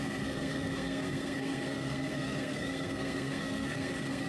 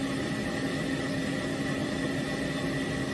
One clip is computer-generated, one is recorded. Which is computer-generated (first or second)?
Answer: first